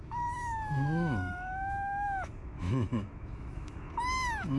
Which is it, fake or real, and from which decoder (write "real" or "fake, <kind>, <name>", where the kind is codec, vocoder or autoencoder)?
fake, autoencoder, DAC-VAE